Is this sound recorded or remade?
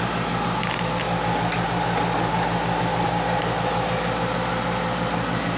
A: recorded